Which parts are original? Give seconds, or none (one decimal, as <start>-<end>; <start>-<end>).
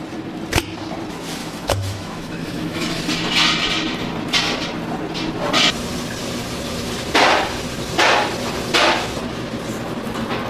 0.0-1.4; 3.0-10.5